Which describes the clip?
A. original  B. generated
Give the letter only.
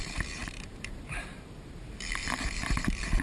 B